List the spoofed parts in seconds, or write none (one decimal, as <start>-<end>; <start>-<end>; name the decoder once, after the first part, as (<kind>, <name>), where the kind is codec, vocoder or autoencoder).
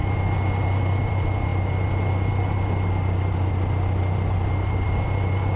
none